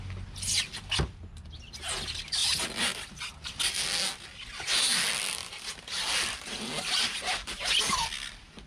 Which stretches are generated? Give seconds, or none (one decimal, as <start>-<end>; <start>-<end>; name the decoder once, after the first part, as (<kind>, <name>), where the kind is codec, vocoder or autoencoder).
none